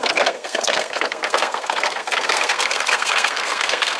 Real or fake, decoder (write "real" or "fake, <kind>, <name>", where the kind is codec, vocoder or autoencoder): fake, codec, SNAC